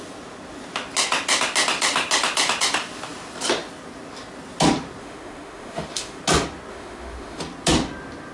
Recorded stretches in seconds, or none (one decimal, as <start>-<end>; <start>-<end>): 0.0-5.0; 6.2-6.7; 7.4-8.3